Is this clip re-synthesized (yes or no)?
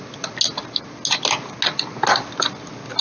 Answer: no